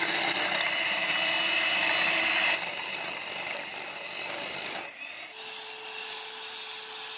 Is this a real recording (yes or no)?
yes